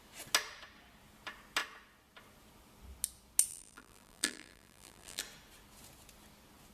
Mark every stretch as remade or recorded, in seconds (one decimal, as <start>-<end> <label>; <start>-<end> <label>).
0.0-3.5 recorded; 3.5-5.2 remade; 5.2-6.7 recorded